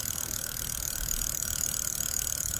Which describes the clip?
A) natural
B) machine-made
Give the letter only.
A